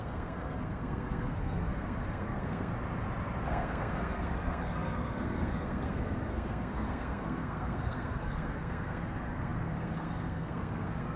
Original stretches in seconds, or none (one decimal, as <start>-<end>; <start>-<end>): 2.7-3.5